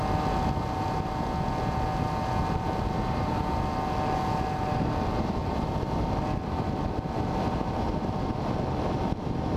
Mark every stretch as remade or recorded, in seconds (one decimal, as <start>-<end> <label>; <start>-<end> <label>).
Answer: 0.0-9.6 recorded